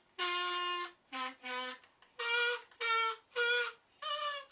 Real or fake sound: real